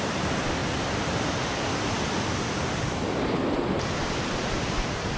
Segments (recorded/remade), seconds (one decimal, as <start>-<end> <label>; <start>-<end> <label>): 0.0-5.2 recorded